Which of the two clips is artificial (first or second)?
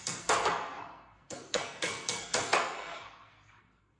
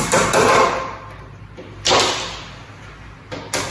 first